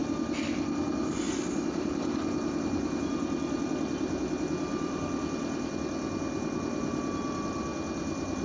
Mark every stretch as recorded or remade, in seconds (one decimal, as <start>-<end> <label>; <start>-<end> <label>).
0.0-3.7 remade; 3.7-4.7 recorded; 4.7-5.7 remade; 5.7-8.4 recorded